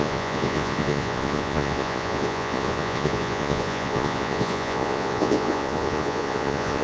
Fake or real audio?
fake